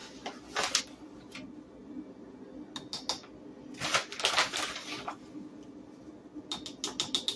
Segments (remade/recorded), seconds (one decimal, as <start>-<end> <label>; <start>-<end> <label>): 0.0-7.4 recorded